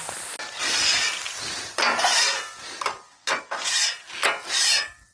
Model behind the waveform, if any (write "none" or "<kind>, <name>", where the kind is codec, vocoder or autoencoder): none